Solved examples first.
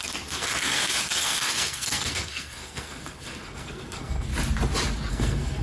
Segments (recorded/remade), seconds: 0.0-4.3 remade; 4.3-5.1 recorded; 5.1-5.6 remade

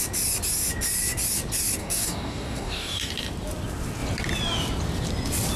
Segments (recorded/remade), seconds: 0.0-1.8 recorded; 1.8-3.1 remade; 3.1-5.6 recorded

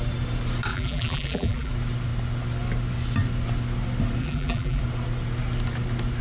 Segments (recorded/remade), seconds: 0.0-0.7 recorded; 0.7-1.7 remade; 1.7-4.2 recorded; 4.2-4.8 remade; 4.8-6.2 recorded

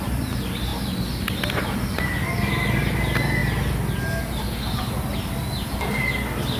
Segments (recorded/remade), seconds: 0.0-6.6 recorded

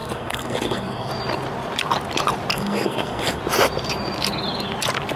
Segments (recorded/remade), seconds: 0.0-1.1 remade; 1.1-2.5 recorded; 2.5-3.4 remade; 3.4-5.2 recorded